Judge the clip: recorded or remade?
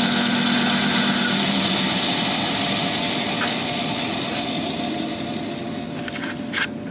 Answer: recorded